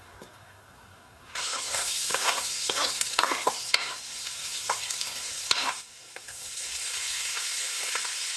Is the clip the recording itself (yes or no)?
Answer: no